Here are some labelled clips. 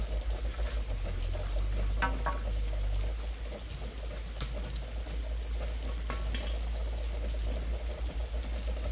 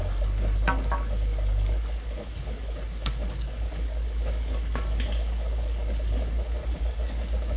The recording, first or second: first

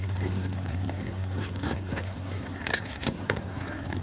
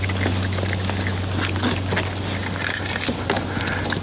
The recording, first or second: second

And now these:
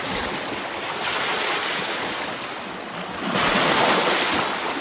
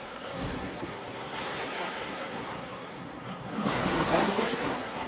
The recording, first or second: first